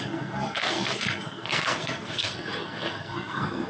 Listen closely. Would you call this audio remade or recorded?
remade